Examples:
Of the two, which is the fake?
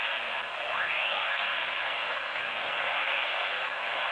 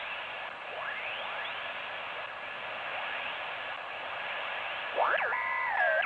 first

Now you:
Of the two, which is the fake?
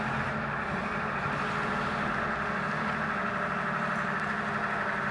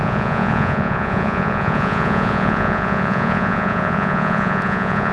second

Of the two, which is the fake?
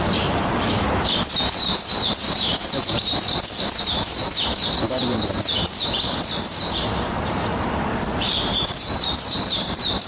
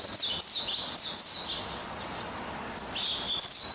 first